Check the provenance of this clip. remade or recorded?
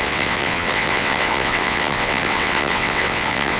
remade